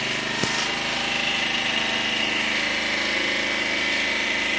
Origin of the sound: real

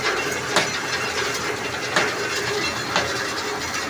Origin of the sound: real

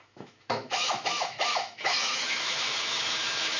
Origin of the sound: fake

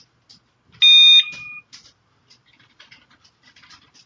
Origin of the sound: real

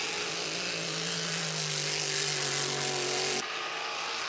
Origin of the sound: real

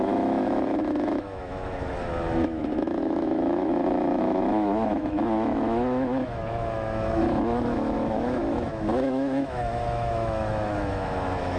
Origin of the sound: fake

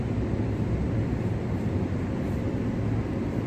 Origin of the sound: real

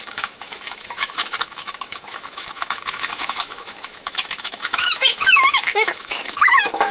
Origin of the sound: fake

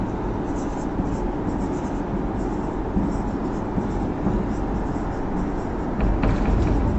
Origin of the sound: real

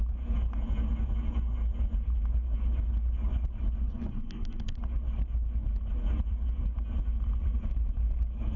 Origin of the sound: real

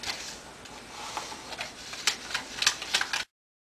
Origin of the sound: real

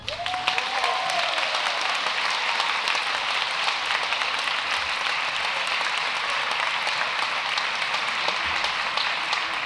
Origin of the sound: real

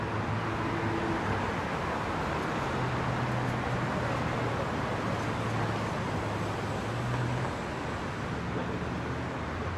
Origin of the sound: real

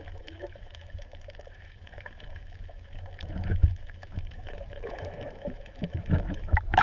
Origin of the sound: fake